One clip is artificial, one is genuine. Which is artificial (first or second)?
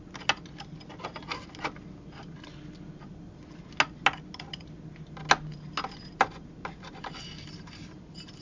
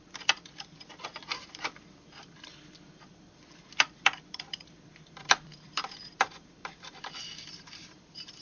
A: second